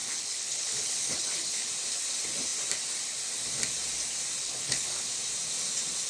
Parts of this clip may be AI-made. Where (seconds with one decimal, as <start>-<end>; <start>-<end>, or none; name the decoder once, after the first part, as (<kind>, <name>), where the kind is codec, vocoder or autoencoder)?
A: 0.0-1.7 (codec, HILCodec); 4.4-5.1